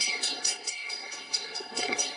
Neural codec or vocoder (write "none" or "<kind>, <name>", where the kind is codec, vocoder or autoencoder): codec, SNAC